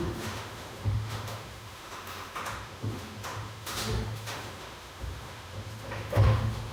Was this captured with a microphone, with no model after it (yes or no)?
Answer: no